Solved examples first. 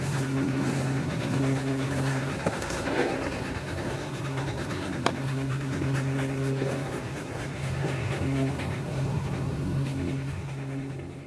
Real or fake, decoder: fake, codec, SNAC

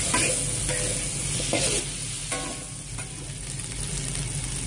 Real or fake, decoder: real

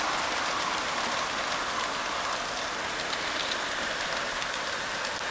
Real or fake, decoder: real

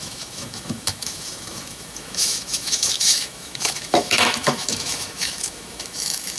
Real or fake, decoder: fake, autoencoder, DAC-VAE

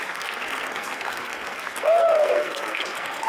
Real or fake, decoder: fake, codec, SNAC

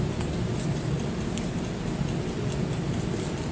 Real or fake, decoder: real